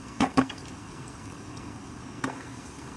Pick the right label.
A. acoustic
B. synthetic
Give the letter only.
B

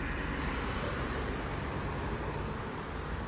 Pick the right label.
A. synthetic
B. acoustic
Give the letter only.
B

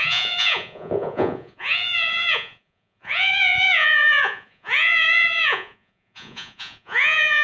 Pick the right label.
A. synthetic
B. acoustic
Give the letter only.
A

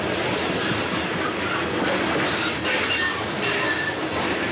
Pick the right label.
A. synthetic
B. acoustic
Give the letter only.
B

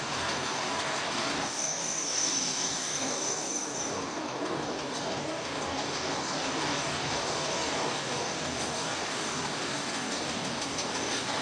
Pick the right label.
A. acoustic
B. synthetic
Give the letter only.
B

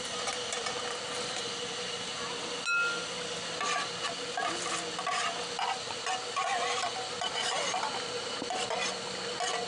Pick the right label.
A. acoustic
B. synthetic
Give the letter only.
A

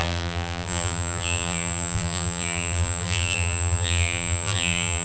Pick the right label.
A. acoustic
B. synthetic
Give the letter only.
B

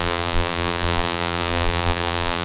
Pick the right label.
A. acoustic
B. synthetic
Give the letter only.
B